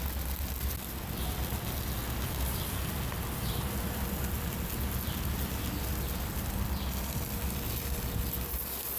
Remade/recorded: recorded